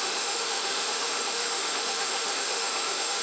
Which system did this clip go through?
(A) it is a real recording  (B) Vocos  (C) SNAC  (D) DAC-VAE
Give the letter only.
D